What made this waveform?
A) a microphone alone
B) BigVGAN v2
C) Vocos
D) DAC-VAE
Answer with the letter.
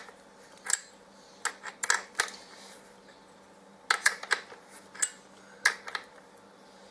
A